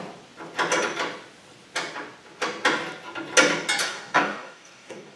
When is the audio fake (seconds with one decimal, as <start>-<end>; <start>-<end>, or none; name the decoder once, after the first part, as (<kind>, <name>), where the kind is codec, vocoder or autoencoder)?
3.8-5.2 (codec, DAC)